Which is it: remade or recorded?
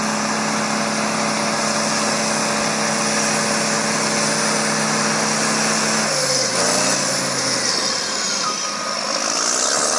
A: recorded